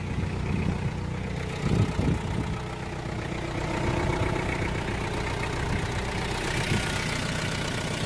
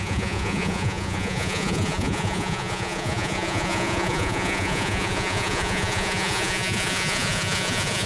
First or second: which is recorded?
first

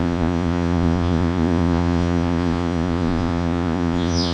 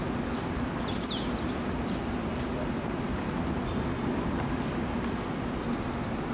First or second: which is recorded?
second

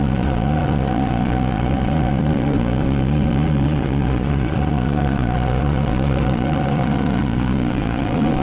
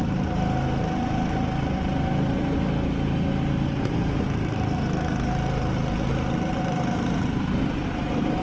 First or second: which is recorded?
second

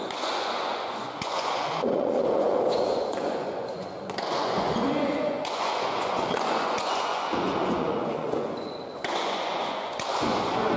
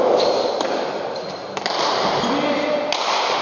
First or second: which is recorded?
second